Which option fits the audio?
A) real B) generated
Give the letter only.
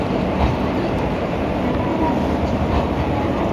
B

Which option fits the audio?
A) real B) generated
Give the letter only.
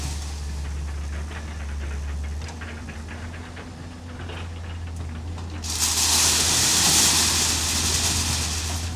B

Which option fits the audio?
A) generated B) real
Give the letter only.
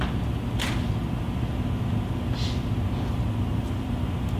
B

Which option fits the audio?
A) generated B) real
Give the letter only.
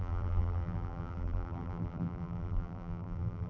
A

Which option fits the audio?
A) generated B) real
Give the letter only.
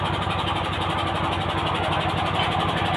B